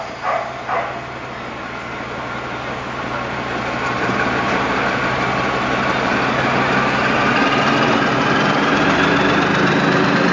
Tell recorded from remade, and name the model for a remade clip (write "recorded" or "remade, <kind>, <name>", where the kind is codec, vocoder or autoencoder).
recorded